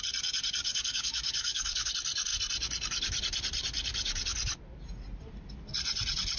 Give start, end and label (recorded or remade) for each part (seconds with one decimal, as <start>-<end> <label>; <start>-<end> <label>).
0.0-0.6 recorded; 0.6-1.9 remade; 1.9-6.4 recorded